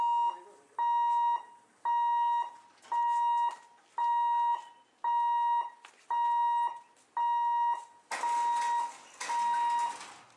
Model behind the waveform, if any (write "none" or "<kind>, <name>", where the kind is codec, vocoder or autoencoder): none